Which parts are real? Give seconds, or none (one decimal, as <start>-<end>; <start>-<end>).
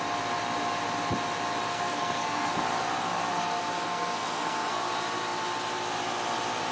0.0-1.7; 2.6-3.3; 4.8-6.7